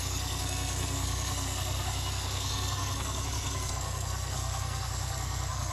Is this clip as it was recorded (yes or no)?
no